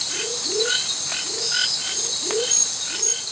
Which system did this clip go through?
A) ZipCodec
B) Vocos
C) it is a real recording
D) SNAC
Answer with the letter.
C